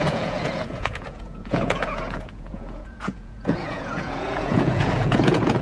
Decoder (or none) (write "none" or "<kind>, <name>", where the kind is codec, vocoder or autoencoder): vocoder, Vocos